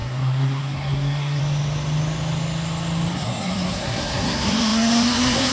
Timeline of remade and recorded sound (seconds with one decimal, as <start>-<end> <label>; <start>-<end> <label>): 0.0-1.4 remade; 1.4-3.1 recorded; 3.1-5.5 remade